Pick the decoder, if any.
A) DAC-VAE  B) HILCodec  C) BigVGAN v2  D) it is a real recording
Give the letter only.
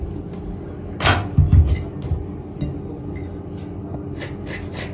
D